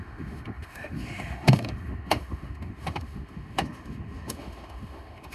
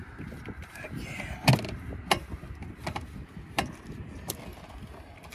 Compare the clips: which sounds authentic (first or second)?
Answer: second